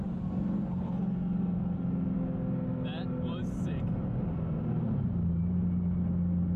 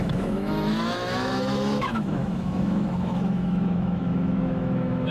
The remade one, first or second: second